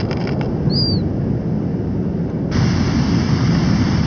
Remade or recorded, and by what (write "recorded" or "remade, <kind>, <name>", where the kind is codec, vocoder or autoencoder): recorded